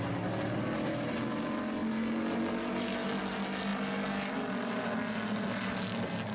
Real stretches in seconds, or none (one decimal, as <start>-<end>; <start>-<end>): 0.0-6.3